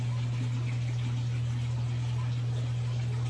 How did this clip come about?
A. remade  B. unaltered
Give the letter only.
B